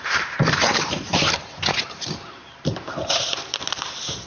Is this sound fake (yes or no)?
yes